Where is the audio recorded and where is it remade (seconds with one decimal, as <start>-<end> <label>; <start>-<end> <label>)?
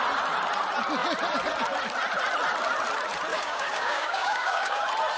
0.0-3.3 recorded; 3.3-4.8 remade; 4.8-5.2 recorded